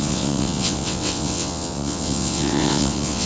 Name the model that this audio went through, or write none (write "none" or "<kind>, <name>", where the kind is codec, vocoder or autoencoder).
vocoder, WaveNeXt